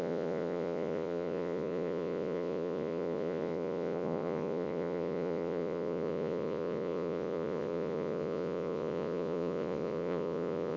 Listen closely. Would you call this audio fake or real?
fake